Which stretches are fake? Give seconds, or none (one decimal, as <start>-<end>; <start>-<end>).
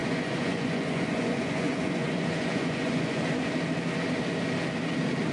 0.0-3.2